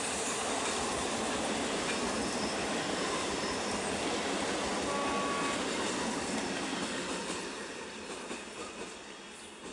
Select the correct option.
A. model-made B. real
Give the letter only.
B